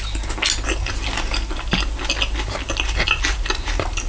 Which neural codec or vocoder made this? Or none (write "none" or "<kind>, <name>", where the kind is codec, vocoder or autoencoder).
none